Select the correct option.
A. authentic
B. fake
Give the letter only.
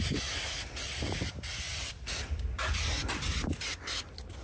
A